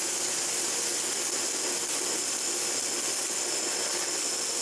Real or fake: real